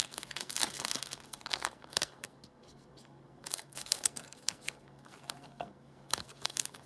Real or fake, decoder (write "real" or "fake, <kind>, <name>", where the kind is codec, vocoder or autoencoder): fake, codec, SNAC